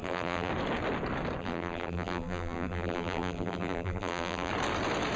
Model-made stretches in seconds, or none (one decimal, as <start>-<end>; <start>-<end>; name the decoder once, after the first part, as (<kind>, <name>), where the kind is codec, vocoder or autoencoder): 0.0-0.5 (vocoder, BigVGAN v2); 1.4-4.5